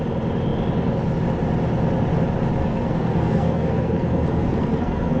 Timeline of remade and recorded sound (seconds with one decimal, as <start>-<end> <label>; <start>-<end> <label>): 0.0-2.6 recorded; 2.6-5.2 remade